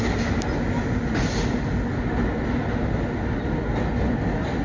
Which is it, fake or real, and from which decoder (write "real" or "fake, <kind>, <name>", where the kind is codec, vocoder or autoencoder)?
real